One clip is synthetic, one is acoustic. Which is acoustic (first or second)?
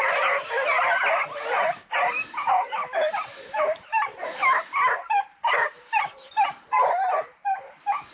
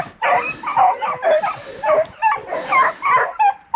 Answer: second